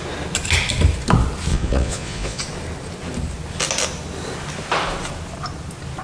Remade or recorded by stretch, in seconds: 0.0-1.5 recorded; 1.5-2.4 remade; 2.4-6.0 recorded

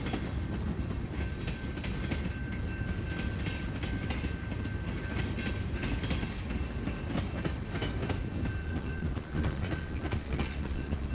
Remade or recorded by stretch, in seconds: 0.0-8.6 recorded; 8.6-11.1 remade

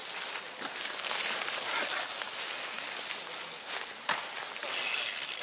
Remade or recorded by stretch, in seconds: 0.0-5.4 recorded

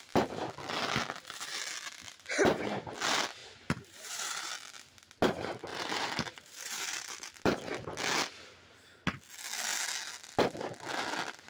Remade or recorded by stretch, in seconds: 0.0-3.4 recorded; 3.4-4.5 remade; 4.5-5.7 recorded; 5.7-7.4 remade; 7.4-11.5 recorded

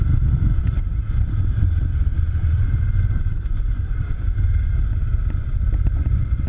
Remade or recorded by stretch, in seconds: 0.0-0.6 recorded; 0.6-1.1 remade; 1.1-6.5 recorded